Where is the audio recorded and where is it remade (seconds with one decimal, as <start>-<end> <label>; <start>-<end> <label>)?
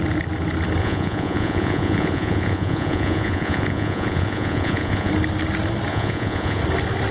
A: 0.0-0.8 recorded; 0.8-5.1 remade; 5.1-5.9 recorded; 5.9-6.6 remade; 6.6-7.1 recorded